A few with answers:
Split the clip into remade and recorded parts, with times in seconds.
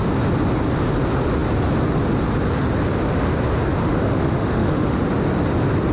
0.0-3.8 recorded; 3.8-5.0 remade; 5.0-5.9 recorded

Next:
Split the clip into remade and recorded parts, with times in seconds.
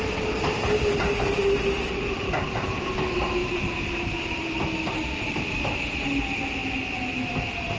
0.0-7.8 recorded